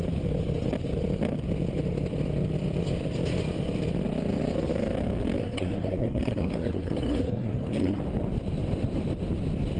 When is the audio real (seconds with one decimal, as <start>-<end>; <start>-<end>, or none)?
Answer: 0.0-5.4; 8.0-9.8